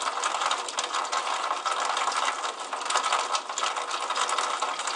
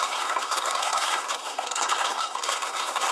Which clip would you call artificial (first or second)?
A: second